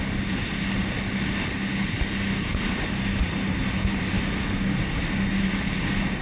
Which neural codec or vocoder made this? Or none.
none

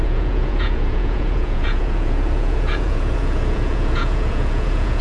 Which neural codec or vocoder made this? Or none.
vocoder, Vocos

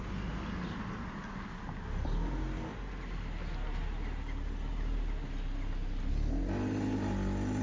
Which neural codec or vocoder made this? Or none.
none